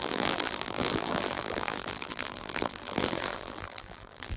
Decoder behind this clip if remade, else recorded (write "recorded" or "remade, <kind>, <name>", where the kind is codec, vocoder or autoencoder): remade, vocoder, BigVGAN v2